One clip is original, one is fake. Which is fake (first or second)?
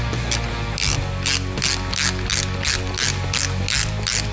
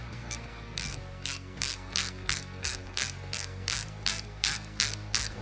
second